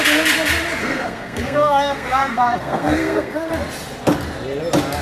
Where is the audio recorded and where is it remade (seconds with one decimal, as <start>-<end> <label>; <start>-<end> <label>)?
0.0-0.8 recorded; 0.8-3.5 remade; 3.5-5.0 recorded